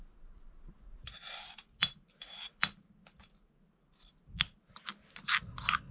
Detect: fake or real real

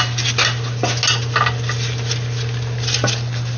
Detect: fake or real real